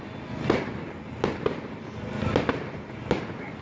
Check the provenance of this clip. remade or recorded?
recorded